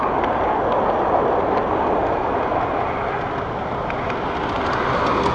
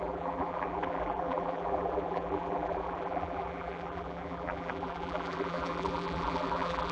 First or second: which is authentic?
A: first